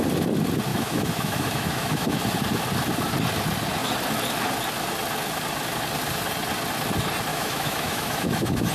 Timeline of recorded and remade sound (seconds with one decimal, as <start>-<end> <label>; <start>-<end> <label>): 0.0-0.7 recorded; 0.7-2.2 remade; 2.2-7.3 recorded; 7.3-8.7 remade